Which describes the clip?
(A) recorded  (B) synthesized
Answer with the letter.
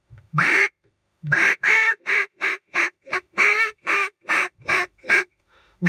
B